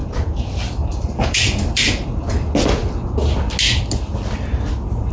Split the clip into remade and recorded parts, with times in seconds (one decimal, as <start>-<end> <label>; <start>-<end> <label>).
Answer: 0.0-2.4 remade; 2.4-5.1 recorded